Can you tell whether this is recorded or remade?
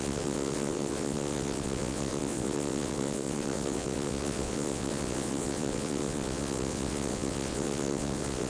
remade